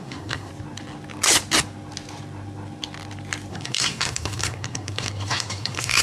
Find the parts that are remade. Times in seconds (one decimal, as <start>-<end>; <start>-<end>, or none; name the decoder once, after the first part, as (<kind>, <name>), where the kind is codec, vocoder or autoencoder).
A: 0.0-0.5 (codec, SNAC); 3.5-6.0